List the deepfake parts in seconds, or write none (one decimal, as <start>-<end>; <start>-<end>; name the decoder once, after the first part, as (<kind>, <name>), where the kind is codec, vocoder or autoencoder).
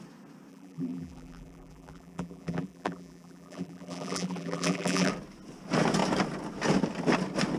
0.5-5.1 (vocoder, BigVGAN v2)